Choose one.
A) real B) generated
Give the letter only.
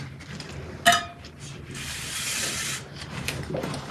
B